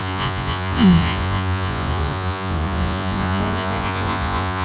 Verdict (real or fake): fake